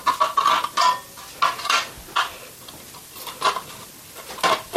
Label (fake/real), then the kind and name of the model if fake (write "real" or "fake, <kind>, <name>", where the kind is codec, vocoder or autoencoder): real